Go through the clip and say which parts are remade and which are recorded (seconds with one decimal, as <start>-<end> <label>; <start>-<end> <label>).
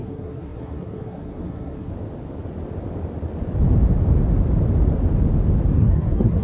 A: 0.0-1.9 remade; 1.9-5.7 recorded; 5.7-6.4 remade